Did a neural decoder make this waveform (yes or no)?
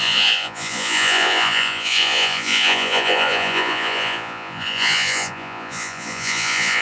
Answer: yes